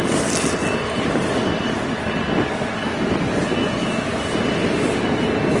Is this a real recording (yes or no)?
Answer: yes